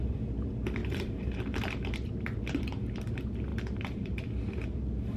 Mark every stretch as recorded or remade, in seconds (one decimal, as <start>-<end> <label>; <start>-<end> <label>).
0.0-0.8 recorded; 0.8-2.6 remade; 2.6-3.5 recorded; 3.5-4.3 remade; 4.3-5.2 recorded